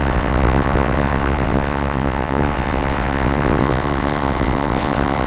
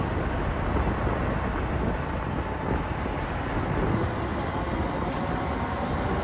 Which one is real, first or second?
second